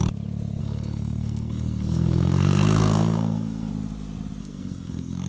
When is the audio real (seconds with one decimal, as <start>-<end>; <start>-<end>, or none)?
0.0-0.6; 3.7-4.4